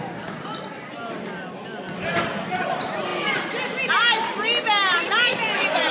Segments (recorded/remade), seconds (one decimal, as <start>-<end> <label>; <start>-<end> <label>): 0.0-5.9 recorded